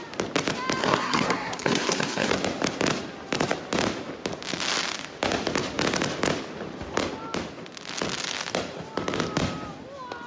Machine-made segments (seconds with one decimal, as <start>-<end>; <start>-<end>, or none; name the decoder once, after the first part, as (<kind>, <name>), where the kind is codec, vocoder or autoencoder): 0.8-2.3 (codec, SNAC)